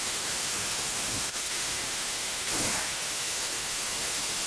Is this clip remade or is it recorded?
remade